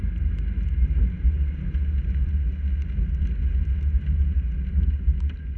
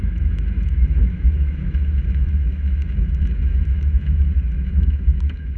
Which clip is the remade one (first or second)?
second